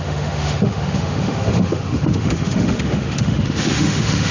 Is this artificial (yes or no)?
yes